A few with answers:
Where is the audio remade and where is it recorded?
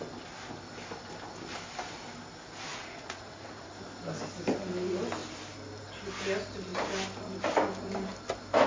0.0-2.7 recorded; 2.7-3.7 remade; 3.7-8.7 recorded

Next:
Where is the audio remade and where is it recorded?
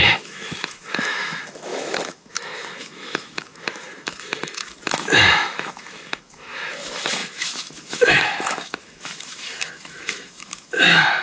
0.0-11.2 remade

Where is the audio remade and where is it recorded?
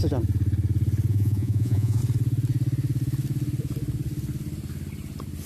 0.0-1.1 recorded; 1.1-2.0 remade; 2.0-5.5 recorded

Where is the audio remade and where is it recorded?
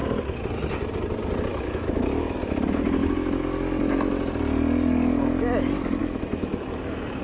0.0-1.5 recorded; 1.5-2.4 remade; 2.4-6.0 recorded; 6.0-7.2 remade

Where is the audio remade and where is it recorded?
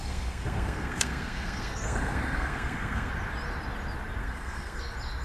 0.0-3.1 remade; 3.1-4.2 recorded; 4.2-4.8 remade; 4.8-5.2 recorded